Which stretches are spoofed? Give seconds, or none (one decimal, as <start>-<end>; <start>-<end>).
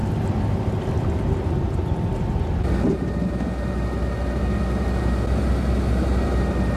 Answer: none